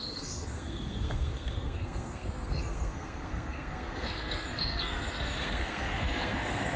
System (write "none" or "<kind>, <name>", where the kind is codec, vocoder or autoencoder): codec, SNAC